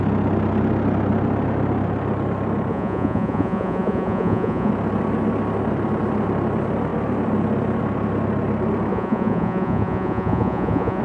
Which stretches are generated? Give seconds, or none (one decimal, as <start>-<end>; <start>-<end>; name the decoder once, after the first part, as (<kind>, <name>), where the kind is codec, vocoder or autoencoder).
2.7-4.7 (vocoder, Vocos); 8.9-11.0